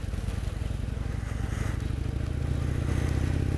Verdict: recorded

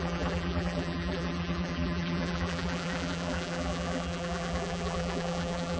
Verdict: remade